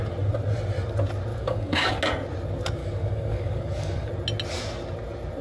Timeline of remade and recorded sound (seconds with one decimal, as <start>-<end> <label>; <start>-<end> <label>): 0.0-1.3 recorded; 1.3-1.9 remade; 1.9-2.8 recorded; 2.8-4.1 remade; 4.1-5.4 recorded